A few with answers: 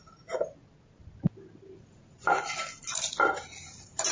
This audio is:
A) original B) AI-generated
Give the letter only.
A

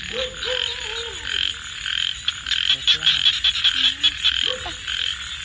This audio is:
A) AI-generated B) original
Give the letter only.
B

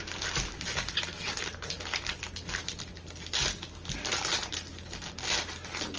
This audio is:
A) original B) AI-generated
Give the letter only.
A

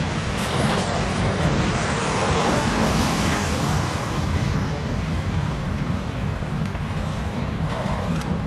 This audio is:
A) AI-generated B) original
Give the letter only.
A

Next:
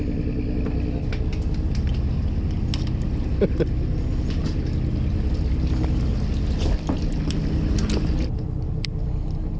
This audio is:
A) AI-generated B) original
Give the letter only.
B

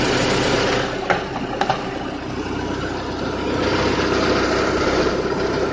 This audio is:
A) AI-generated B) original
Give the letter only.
B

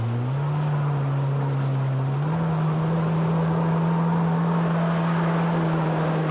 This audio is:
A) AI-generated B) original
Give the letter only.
B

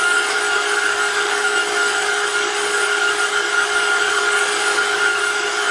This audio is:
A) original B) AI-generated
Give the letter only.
B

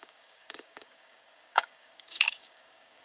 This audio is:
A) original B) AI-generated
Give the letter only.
B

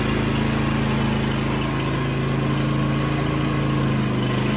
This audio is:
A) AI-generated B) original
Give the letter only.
B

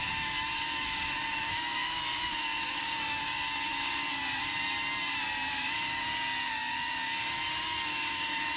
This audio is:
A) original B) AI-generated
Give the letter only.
B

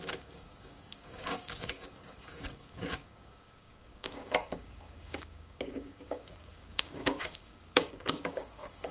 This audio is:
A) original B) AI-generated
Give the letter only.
B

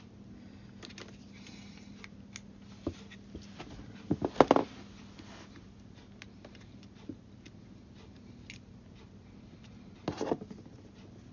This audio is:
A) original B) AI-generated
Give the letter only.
A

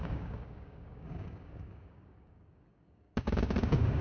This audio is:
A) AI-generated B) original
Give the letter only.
A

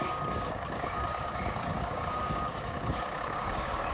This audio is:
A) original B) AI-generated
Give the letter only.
B